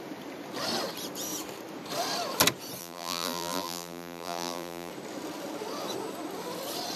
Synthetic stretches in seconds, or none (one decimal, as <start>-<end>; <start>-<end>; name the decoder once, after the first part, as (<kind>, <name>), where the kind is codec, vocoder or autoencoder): 2.8-4.9 (vocoder, BigVGAN v2)